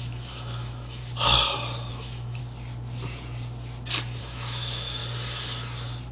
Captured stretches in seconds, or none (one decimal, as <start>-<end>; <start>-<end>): 1.0-1.9; 2.4-4.2; 5.0-6.1